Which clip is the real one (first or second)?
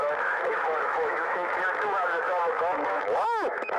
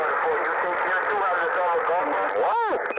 second